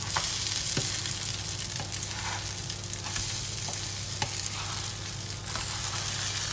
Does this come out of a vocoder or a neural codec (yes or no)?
no